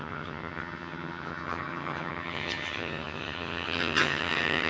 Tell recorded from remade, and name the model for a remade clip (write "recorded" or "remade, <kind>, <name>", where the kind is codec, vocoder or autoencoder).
remade, vocoder, HiFi-GAN